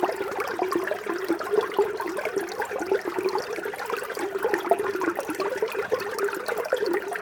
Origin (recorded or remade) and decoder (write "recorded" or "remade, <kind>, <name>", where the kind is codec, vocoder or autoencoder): recorded